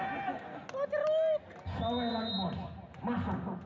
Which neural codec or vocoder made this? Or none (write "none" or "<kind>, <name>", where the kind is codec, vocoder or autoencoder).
none